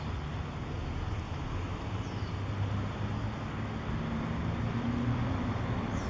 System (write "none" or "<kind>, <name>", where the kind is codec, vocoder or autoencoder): none